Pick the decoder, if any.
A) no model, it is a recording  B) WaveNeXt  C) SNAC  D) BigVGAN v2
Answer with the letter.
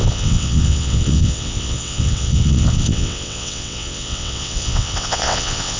B